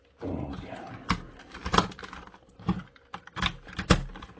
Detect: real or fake real